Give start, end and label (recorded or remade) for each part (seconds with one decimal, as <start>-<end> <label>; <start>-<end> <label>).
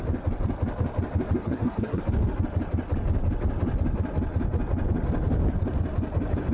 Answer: 0.0-1.4 recorded; 1.4-2.0 remade; 2.0-6.5 recorded